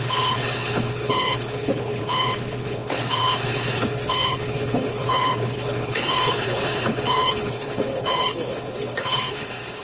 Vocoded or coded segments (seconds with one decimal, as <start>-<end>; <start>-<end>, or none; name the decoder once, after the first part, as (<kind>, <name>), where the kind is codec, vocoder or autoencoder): 0.0-9.8 (codec, HILCodec)